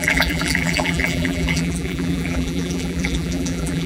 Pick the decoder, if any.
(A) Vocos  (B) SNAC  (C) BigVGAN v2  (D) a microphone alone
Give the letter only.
C